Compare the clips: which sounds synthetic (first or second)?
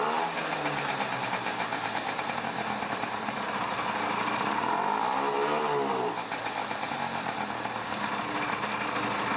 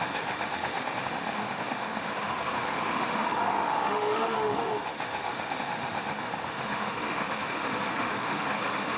second